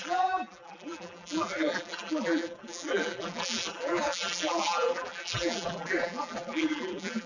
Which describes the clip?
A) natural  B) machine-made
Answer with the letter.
B